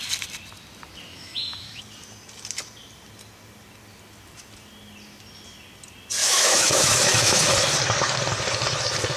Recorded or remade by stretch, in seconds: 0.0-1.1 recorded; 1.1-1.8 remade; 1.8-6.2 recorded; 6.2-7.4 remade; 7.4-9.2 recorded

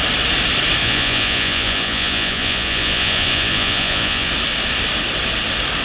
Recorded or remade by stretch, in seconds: 0.0-0.8 recorded; 0.8-4.3 remade; 4.3-5.8 recorded

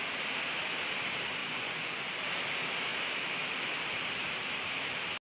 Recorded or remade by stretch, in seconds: 0.0-1.4 recorded; 1.4-2.0 remade; 2.0-5.2 recorded

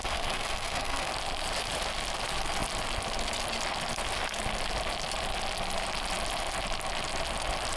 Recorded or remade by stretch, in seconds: 0.0-1.1 remade; 1.1-7.8 recorded

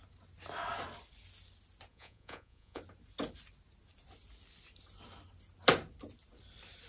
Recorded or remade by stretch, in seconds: 0.0-1.9 recorded; 1.9-2.8 remade; 2.8-6.9 recorded

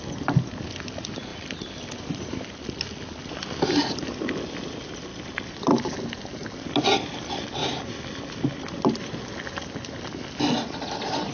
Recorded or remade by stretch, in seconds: 0.0-1.3 recorded; 1.3-2.4 remade; 2.4-5.1 recorded; 5.1-6.0 remade; 6.0-11.3 recorded